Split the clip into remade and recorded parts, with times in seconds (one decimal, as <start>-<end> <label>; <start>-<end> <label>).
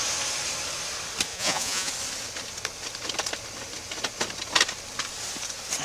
0.0-1.3 recorded; 1.3-1.9 remade; 1.9-5.8 recorded